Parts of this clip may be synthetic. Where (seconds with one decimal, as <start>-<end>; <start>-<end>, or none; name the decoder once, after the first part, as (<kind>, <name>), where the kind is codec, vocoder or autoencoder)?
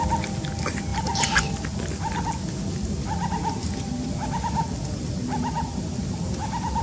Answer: none